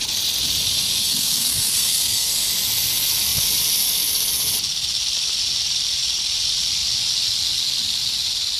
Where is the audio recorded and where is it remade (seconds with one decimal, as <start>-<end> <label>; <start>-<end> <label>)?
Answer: 0.0-1.0 recorded; 1.0-2.4 remade; 2.4-8.6 recorded